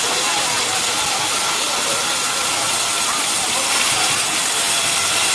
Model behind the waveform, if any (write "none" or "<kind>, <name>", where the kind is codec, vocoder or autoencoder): none